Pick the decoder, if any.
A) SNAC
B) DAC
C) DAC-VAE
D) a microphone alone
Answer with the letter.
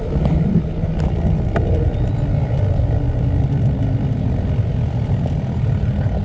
D